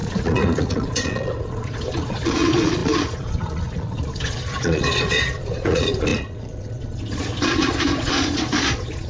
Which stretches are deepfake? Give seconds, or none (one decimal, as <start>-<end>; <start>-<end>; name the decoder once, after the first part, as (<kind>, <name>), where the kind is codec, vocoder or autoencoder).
0.0-9.1 (vocoder, Vocos)